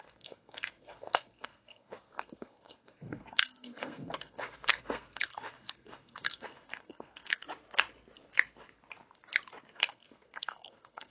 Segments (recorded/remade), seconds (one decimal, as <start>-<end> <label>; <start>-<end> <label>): 0.0-7.4 remade; 7.4-9.6 recorded; 9.6-11.1 remade